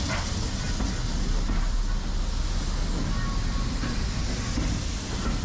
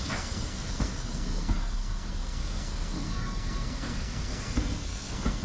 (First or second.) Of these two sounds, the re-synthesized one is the second